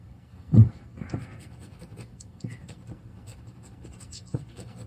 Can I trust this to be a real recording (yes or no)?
no